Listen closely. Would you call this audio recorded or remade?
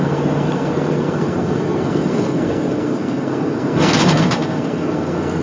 remade